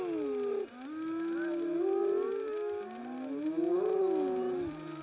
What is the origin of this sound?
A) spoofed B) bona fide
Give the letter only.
B